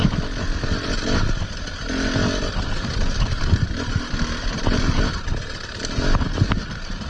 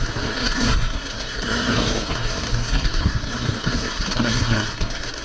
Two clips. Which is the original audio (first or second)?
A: first